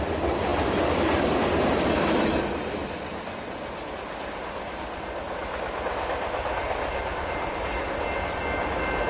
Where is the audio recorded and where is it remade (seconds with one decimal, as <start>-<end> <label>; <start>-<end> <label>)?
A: 0.0-6.6 recorded; 6.6-7.8 remade; 7.8-9.1 recorded